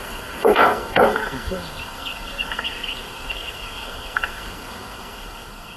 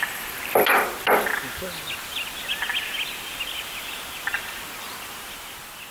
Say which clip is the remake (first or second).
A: first